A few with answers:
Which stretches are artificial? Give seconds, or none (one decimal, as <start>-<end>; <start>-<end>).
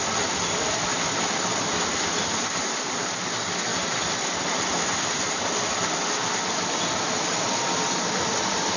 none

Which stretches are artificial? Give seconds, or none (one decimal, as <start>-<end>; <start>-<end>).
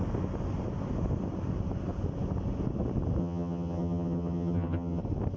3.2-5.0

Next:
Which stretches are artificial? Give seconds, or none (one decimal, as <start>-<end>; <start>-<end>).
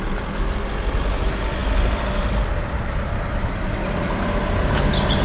none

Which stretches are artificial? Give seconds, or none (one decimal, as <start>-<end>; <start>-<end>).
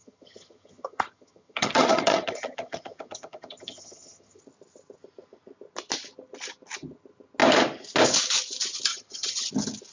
0.0-4.4; 8.9-9.5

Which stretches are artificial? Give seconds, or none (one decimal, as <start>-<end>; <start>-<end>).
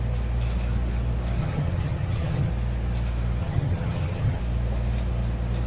1.4-2.5; 3.4-4.4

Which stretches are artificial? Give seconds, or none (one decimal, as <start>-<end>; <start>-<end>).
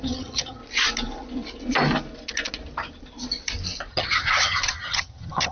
0.0-0.6; 3.9-5.5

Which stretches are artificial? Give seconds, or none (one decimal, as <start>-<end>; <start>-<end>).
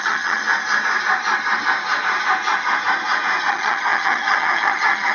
0.0-0.4; 3.5-5.1